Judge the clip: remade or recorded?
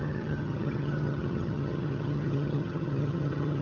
remade